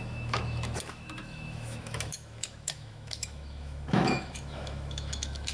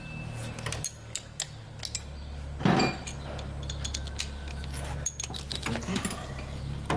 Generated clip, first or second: first